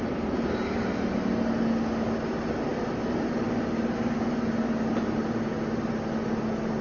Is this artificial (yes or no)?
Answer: no